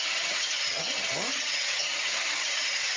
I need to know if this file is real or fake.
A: fake